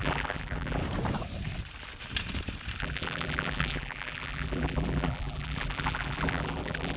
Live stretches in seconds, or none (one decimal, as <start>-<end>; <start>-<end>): 0.8-2.8